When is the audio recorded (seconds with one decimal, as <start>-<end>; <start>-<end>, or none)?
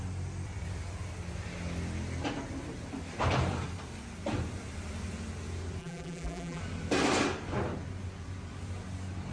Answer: 0.0-5.8; 6.6-9.3